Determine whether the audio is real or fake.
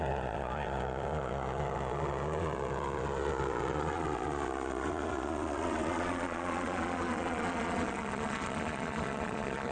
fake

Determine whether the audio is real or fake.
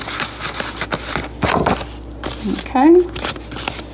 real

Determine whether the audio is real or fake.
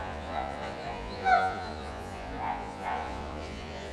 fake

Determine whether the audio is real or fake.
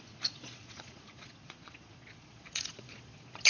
fake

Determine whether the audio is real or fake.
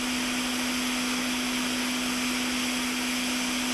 real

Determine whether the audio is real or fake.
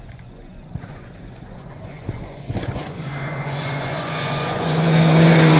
fake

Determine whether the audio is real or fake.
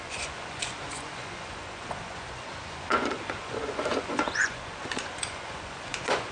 fake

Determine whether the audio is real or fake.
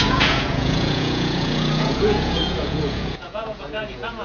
fake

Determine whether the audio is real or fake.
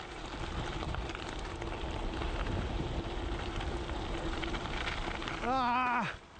real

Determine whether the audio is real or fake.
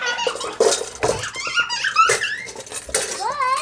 real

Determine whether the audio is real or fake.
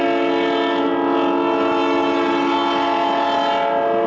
real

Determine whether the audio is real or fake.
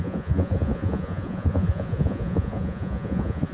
fake